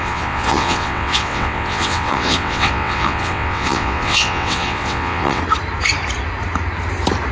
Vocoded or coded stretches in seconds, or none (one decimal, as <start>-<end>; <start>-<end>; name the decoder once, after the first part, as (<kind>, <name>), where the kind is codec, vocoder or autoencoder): 0.0-5.4 (vocoder, WaveNeXt)